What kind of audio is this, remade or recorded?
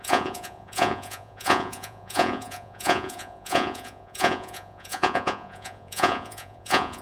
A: remade